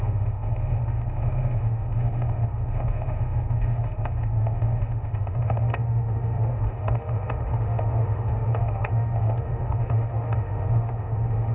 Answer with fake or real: fake